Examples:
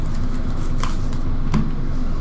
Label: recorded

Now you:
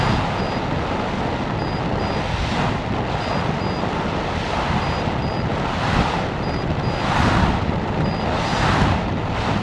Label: recorded